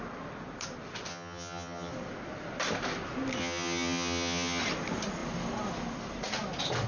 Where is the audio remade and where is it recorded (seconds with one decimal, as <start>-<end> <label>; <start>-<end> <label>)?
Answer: 0.0-1.1 recorded; 1.1-1.9 remade; 1.9-3.4 recorded; 3.4-4.6 remade; 4.6-6.9 recorded